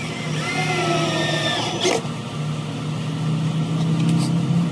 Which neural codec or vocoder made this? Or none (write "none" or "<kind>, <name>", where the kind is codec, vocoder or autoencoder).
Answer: none